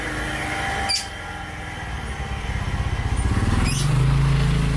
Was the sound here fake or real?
real